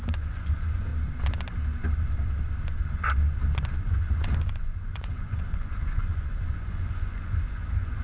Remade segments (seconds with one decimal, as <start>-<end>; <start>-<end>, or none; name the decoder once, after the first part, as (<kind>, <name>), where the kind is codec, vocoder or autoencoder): 0.0-0.9 (vocoder, Vocos); 3.8-8.0